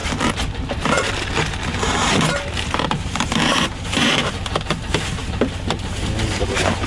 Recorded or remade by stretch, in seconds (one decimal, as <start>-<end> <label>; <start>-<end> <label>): 0.0-1.1 remade; 1.1-1.7 recorded; 1.7-4.3 remade; 4.3-5.2 recorded; 5.2-5.9 remade; 5.9-6.9 recorded